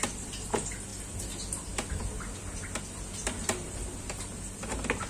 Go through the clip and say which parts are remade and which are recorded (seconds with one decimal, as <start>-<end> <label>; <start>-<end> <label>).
0.0-5.1 recorded